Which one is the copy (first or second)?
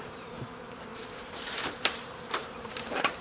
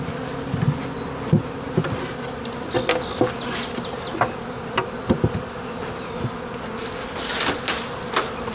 first